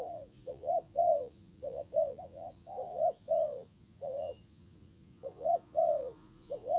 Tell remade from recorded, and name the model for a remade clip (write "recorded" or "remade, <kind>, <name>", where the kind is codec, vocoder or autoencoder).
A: remade, vocoder, Vocos